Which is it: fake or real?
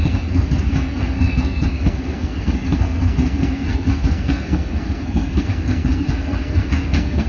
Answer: fake